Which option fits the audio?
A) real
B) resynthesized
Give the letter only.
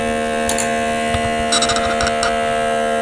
A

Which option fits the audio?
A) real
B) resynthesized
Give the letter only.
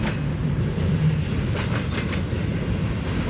A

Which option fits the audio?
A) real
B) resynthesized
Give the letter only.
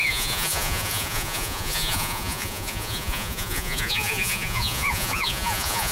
B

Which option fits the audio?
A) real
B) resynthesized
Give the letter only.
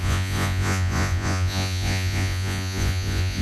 B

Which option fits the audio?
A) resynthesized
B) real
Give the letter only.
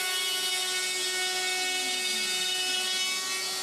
B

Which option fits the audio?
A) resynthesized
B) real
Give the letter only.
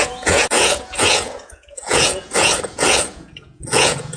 A